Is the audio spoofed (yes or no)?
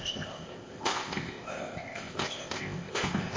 yes